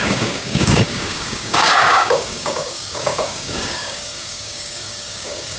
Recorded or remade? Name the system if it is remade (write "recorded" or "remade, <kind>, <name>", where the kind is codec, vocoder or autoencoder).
remade, codec, DAC